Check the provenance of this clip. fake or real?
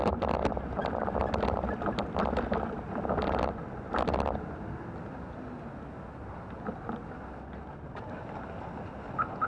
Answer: real